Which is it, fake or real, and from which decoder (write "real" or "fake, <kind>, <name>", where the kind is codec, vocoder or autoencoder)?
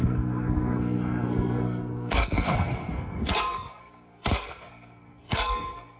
fake, codec, SNAC